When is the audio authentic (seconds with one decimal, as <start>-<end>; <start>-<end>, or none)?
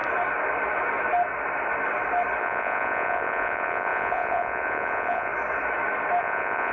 0.0-2.4; 5.3-6.2